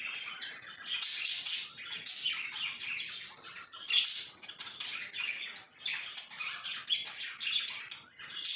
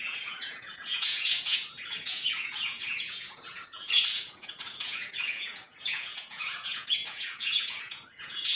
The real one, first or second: first